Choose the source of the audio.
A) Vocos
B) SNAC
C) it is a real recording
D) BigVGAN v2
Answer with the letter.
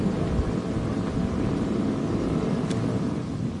C